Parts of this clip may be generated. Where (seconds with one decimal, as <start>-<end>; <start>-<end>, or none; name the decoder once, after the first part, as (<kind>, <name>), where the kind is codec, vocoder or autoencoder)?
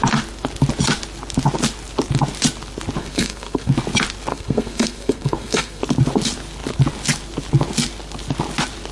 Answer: 3.0-3.7 (codec, SNAC); 4.3-5.8